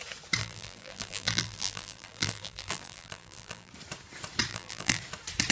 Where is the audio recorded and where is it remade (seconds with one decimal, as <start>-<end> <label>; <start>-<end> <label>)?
0.0-0.4 recorded; 0.4-3.7 remade; 3.7-4.5 recorded; 4.5-5.0 remade; 5.0-5.5 recorded

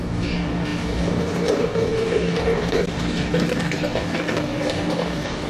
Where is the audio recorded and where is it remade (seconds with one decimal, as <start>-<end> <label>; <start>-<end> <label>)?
0.0-5.5 remade

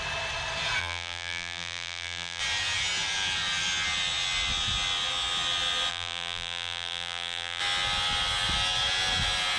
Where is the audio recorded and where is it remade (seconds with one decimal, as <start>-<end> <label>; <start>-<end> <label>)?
0.0-0.8 recorded; 0.8-2.4 remade; 2.4-5.9 recorded; 5.9-7.6 remade; 7.6-9.6 recorded